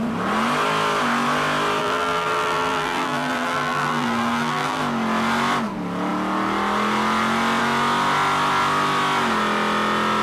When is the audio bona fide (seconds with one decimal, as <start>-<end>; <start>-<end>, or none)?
0.0-1.8; 4.8-10.2